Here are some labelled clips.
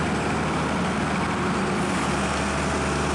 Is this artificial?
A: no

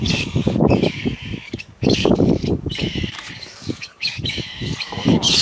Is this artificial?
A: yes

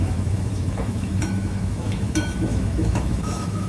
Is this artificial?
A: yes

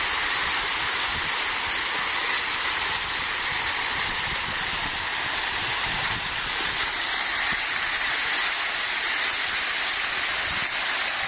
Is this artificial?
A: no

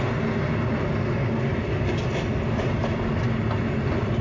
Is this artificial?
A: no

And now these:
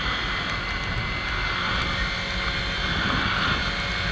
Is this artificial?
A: no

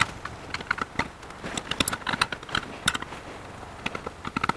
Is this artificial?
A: no